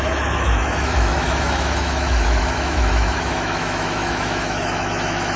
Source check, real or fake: fake